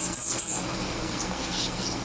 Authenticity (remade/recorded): remade